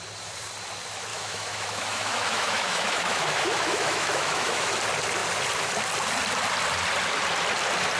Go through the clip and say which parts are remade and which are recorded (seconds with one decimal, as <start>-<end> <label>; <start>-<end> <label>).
0.0-1.1 recorded; 1.1-4.8 remade; 4.8-8.0 recorded